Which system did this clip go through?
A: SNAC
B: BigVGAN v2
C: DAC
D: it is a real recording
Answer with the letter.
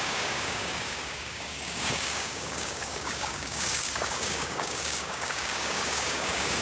C